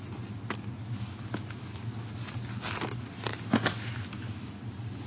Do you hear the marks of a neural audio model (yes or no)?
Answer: no